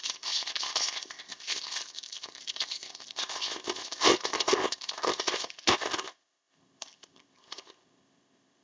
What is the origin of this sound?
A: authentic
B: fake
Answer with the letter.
B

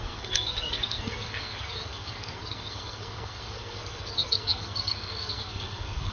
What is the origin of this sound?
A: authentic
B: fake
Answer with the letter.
B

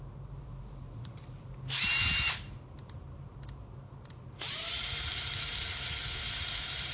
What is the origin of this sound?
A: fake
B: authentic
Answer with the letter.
A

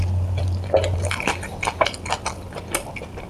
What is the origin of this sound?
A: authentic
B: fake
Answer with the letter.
A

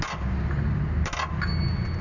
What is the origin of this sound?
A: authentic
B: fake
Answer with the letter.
A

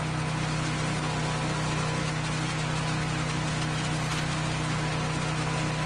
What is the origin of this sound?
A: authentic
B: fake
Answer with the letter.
A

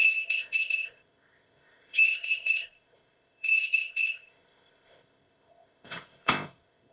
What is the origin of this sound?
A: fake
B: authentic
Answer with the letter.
A